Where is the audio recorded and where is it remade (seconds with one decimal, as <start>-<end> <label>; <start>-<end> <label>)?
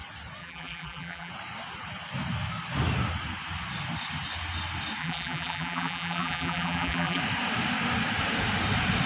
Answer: 0.0-0.4 recorded; 0.4-1.3 remade; 1.3-5.0 recorded; 5.0-7.2 remade; 7.2-9.1 recorded